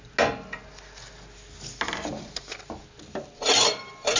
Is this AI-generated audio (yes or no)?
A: no